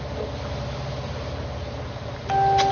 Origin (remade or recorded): recorded